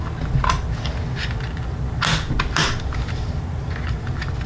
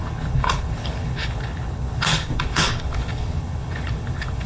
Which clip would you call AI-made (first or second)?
second